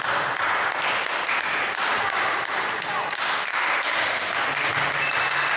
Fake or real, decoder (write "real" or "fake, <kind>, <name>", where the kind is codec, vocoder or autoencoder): real